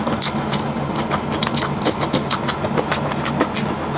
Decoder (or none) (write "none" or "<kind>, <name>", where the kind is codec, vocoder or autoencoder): none